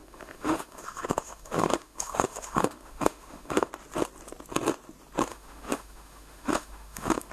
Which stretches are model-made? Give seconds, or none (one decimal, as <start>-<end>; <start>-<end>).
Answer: 0.0-3.7; 5.3-7.3